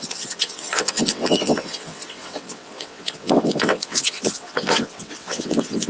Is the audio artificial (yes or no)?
yes